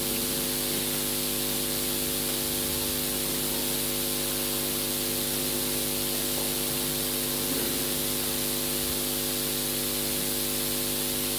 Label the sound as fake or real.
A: real